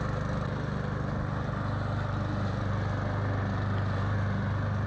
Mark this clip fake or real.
real